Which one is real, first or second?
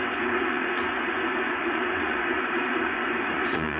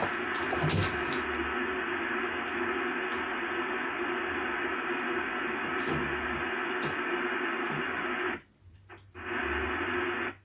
second